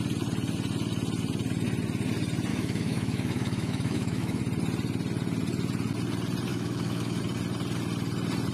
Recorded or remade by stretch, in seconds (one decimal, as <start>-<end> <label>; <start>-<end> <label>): 0.0-2.5 recorded; 2.5-4.4 remade; 4.4-6.5 recorded; 6.5-7.2 remade; 7.2-8.5 recorded

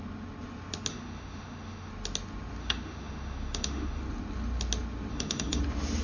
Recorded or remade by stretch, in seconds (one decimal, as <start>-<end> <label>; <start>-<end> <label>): 0.0-0.9 recorded; 0.9-1.9 remade; 1.9-2.6 recorded; 2.6-4.0 remade; 4.0-5.1 recorded; 5.1-5.6 remade; 5.6-6.0 recorded

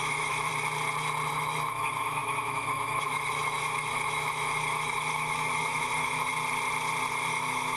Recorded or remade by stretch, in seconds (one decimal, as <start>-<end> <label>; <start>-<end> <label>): 0.0-0.5 remade; 0.5-1.3 recorded; 1.3-6.3 remade; 6.3-7.3 recorded; 7.3-7.8 remade

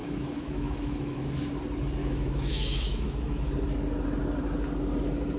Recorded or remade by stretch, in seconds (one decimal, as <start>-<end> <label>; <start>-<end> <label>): 0.0-1.5 remade; 1.5-2.0 recorded; 2.0-3.5 remade; 3.5-5.4 recorded

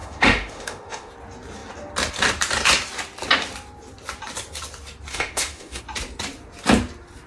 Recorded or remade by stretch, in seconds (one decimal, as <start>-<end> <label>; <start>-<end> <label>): 0.0-1.1 remade; 1.1-5.1 recorded; 5.1-5.8 remade; 5.8-7.3 recorded

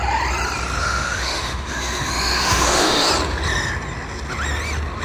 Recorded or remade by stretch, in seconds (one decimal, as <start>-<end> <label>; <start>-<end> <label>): 0.0-0.8 recorded; 0.8-3.1 remade; 3.1-5.0 recorded